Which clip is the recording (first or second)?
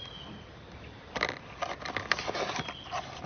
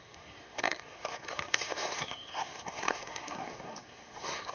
first